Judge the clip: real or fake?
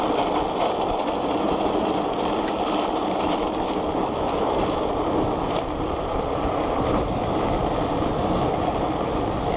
fake